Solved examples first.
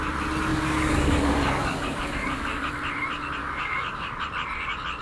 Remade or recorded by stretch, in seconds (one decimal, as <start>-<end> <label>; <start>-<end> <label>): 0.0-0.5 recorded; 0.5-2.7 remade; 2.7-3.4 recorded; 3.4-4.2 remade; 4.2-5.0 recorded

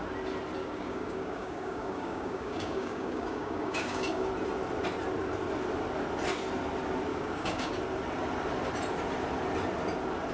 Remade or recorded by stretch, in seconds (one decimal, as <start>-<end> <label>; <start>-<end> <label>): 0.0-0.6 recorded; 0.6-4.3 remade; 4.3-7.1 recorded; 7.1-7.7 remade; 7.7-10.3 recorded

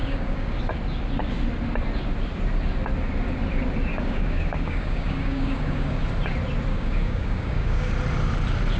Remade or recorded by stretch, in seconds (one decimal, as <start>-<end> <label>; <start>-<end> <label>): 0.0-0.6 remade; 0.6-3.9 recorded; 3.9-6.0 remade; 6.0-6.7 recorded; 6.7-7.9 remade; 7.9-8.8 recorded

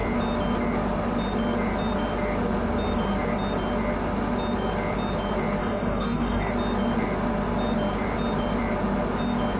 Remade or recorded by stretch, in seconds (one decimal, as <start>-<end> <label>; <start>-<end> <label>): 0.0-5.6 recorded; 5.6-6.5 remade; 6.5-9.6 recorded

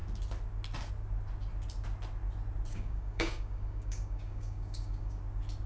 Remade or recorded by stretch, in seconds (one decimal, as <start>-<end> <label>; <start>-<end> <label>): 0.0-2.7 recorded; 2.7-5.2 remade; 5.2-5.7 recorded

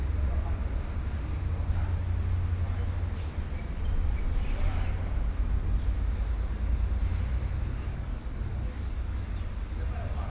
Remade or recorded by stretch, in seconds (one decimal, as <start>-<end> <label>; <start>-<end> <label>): 0.0-7.9 recorded; 7.9-9.2 remade; 9.2-10.3 recorded

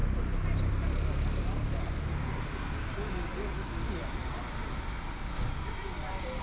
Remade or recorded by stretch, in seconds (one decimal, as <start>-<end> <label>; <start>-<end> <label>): 0.0-6.4 recorded

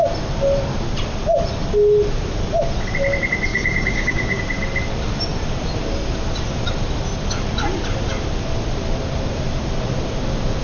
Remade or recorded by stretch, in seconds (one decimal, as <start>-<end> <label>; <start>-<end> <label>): 0.0-3.5 recorded; 3.5-4.4 remade; 4.4-10.6 recorded